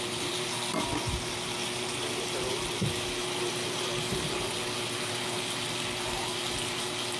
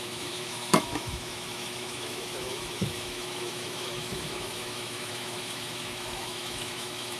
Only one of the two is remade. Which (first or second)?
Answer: second